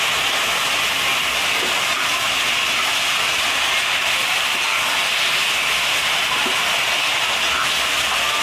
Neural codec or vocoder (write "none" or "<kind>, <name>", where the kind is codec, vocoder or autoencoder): none